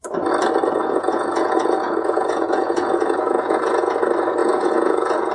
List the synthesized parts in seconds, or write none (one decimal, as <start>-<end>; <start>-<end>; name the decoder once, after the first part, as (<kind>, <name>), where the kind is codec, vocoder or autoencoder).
0.8-4.0 (vocoder, Vocos); 4.4-5.3

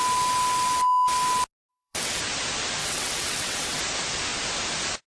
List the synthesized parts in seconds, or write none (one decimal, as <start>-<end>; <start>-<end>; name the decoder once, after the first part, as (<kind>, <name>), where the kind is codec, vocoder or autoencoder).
1.7-2.2 (vocoder, WaveNeXt); 2.8-3.8

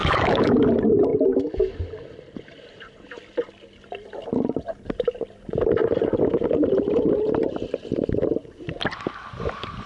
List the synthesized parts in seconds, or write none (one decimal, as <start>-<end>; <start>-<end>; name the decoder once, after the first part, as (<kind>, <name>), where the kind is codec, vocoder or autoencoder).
0.0-0.6 (autoencoder, DAC-VAE)

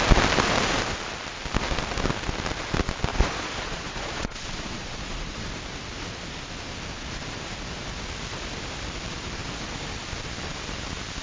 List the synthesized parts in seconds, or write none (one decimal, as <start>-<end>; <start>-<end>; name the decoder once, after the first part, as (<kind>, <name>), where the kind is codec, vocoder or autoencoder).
3.1-5.5 (vocoder, Vocos)

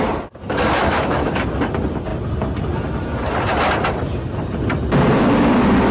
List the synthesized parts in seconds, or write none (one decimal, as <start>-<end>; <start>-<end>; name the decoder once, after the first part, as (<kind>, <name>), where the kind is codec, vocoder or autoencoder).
0.8-1.3 (autoencoder, DAC-VAE)